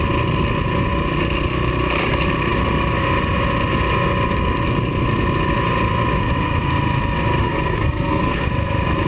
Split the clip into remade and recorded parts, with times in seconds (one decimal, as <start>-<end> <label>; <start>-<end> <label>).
0.0-7.4 recorded; 7.4-8.5 remade; 8.5-9.1 recorded